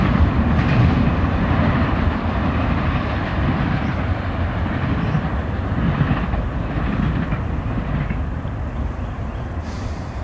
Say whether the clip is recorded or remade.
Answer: remade